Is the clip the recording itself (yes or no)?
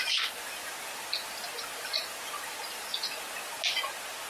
yes